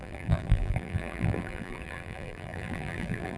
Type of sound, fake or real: fake